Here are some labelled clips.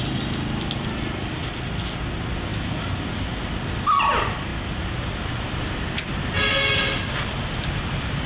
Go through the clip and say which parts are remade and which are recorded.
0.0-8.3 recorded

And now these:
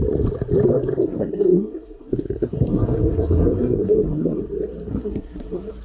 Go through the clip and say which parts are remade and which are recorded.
0.0-0.9 recorded; 0.9-4.4 remade; 4.4-4.9 recorded; 4.9-5.8 remade

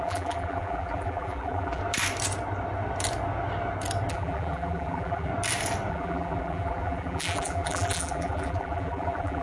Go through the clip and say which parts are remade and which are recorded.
0.0-1.8 remade; 1.8-4.1 recorded; 4.1-5.3 remade; 5.3-5.9 recorded; 5.9-9.4 remade

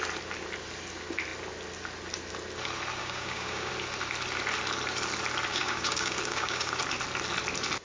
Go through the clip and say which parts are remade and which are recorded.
0.0-3.0 recorded; 3.0-3.7 remade; 3.7-5.5 recorded; 5.5-6.8 remade; 6.8-7.8 recorded

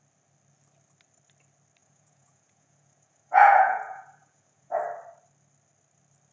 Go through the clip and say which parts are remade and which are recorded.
0.0-1.8 recorded; 1.8-4.8 remade; 4.8-6.3 recorded

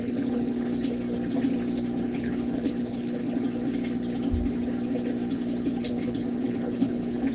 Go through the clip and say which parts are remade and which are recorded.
0.0-0.7 remade; 0.7-2.0 recorded; 2.0-3.2 remade; 3.2-5.9 recorded; 5.9-7.3 remade